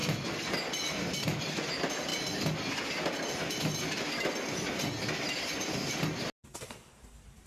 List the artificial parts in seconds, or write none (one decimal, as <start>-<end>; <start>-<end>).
1.4-2.1; 6.6-7.5

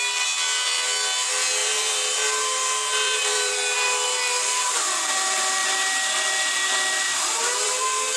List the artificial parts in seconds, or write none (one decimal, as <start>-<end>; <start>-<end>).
1.6-4.8; 5.6-8.2

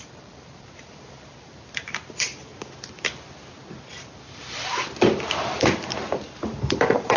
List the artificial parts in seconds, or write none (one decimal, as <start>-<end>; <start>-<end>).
0.0-2.5; 6.8-7.2

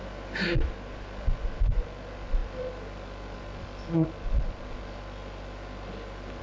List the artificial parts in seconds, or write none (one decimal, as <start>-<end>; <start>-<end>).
none

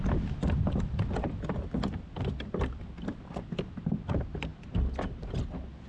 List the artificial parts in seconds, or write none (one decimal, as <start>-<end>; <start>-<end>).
none